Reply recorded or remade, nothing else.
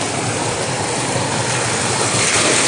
recorded